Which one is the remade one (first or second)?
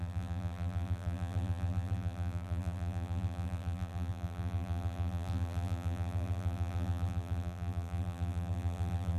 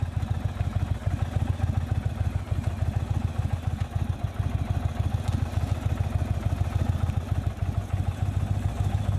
first